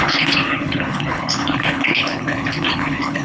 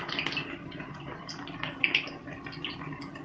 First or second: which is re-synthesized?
first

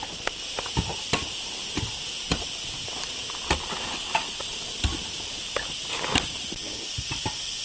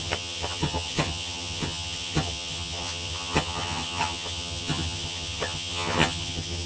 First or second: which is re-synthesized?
second